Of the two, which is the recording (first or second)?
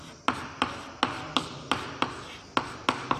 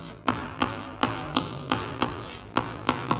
first